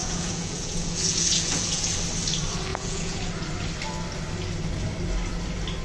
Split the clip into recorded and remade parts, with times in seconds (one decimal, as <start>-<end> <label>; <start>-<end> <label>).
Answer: 0.0-2.0 remade; 2.0-2.7 recorded; 2.7-3.3 remade; 3.3-5.8 recorded